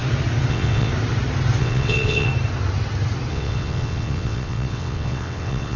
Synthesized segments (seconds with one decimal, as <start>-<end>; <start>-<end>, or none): 0.5-0.9; 1.6-2.3; 3.3-5.8